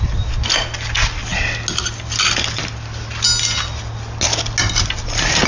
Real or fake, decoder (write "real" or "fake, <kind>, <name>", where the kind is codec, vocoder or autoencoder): real